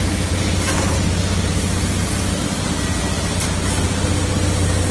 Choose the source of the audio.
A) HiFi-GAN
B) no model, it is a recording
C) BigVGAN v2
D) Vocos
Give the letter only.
B